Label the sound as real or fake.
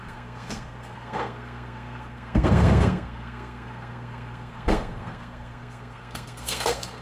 fake